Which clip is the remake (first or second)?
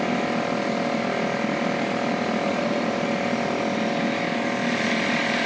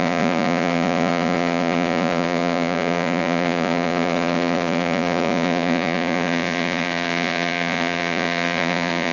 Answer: second